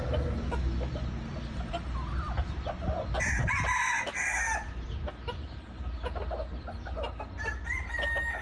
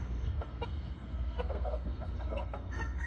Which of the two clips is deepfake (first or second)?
second